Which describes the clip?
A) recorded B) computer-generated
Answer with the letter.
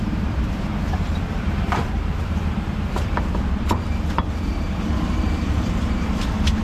B